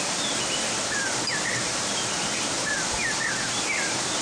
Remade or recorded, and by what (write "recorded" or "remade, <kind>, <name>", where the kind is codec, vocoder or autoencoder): recorded